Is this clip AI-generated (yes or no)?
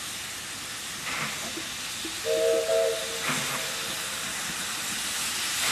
no